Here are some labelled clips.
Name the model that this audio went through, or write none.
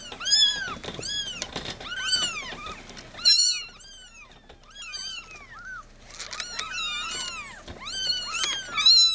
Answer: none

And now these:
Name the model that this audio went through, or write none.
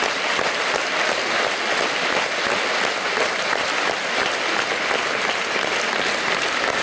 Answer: none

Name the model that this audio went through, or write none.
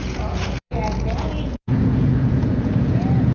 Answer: vocoder, Vocos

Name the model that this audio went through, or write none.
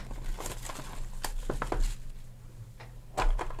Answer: none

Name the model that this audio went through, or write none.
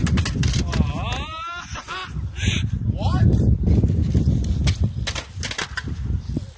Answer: none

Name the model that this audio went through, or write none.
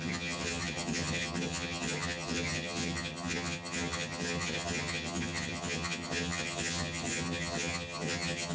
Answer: vocoder, HiFi-GAN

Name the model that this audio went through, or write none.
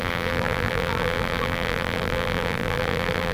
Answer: vocoder, BigVGAN v2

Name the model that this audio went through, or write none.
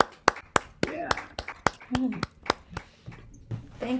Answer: none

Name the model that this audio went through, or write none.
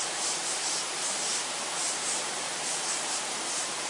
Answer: vocoder, BigVGAN v2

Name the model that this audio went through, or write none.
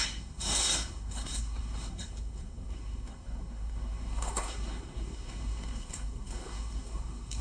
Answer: codec, SNAC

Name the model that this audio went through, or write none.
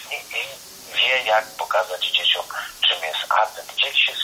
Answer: none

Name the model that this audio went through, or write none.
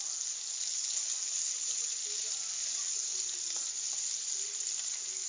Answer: none